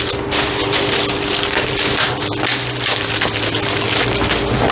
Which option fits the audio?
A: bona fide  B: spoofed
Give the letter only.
A